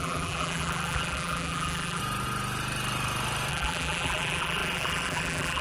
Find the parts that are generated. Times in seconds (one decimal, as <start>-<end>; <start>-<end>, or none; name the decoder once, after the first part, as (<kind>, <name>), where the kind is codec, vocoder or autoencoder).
0.0-2.0 (vocoder, BigVGAN v2); 3.5-5.6

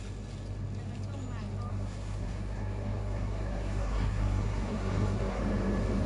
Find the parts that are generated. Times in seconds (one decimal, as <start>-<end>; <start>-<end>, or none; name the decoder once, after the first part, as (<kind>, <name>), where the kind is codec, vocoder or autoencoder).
1.7-5.4 (codec, SNAC)

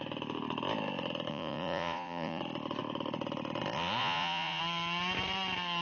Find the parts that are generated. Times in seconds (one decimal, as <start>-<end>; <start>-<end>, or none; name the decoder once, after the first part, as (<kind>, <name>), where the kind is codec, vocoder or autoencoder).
1.3-2.4 (vocoder, Vocos); 4.0-4.6

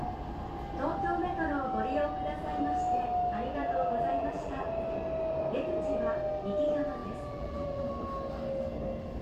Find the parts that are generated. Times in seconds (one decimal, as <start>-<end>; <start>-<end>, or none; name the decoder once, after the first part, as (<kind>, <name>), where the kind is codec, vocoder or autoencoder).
3.5-4.7 (vocoder, BigVGAN v2); 7.0-7.9

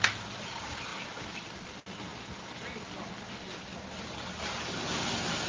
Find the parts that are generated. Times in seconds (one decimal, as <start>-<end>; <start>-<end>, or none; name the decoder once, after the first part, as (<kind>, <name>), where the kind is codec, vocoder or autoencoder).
none

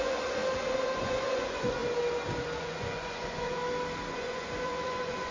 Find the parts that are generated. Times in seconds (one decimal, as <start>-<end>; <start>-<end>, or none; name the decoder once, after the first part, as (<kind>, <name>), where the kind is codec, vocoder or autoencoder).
0.0-0.4 (vocoder, Vocos); 1.0-1.8; 2.6-3.6; 4.1-5.3

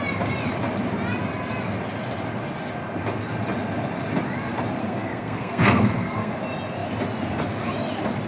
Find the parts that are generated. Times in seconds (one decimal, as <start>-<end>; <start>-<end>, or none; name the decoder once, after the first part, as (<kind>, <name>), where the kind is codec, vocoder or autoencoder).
4.8-6.3 (codec, SNAC)